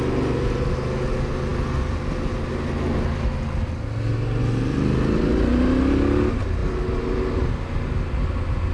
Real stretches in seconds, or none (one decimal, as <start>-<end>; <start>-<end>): 0.0-8.7